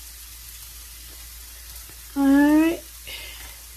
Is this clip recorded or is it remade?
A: recorded